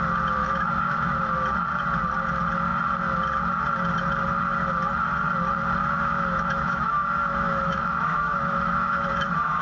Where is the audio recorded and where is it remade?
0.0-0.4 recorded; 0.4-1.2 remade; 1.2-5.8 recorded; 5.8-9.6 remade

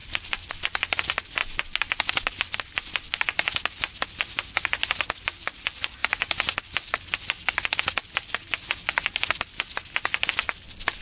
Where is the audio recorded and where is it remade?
0.0-0.5 remade; 0.5-11.0 recorded

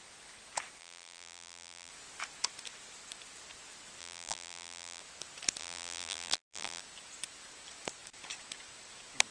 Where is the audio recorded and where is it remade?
0.0-0.8 recorded; 0.8-1.9 remade; 1.9-4.0 recorded; 4.0-5.0 remade; 5.0-5.6 recorded; 5.6-6.8 remade; 6.8-9.3 recorded

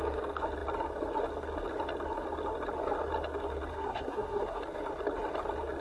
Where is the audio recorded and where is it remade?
0.0-3.7 recorded; 3.7-4.6 remade; 4.6-5.8 recorded

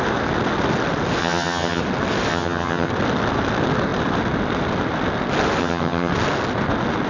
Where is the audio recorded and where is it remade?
0.0-1.2 recorded; 1.2-1.8 remade; 1.8-2.3 recorded; 2.3-2.9 remade; 2.9-5.6 recorded; 5.6-6.1 remade; 6.1-7.1 recorded

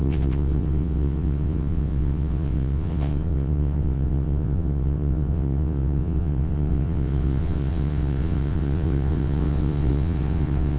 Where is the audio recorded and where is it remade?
0.0-10.8 remade